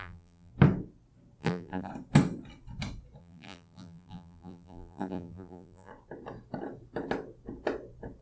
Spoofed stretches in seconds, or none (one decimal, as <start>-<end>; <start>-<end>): 0.0-0.5; 1.4-1.9; 3.2-5.9